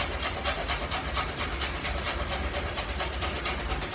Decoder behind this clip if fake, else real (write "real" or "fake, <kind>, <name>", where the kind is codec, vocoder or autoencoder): real